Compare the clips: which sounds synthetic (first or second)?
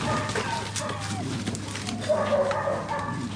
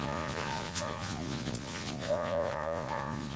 second